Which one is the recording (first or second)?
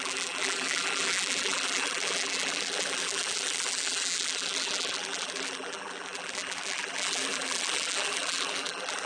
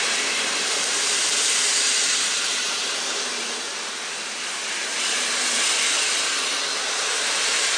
second